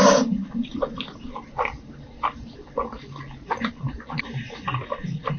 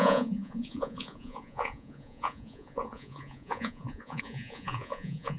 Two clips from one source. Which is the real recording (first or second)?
first